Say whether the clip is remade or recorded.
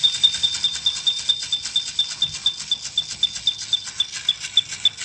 recorded